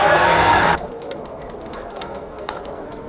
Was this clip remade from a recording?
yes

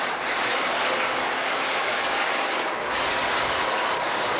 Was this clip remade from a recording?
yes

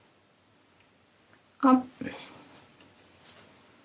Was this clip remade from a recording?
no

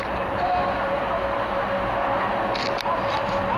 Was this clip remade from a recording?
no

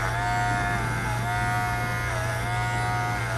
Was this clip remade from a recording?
no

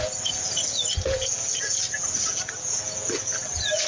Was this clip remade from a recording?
yes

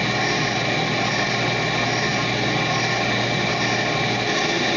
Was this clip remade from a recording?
no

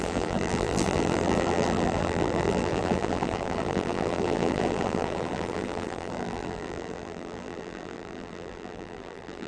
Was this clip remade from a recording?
yes